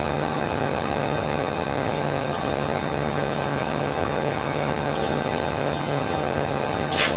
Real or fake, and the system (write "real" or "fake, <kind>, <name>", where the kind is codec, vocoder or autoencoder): fake, vocoder, HiFi-GAN